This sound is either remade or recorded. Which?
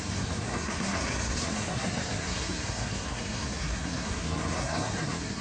remade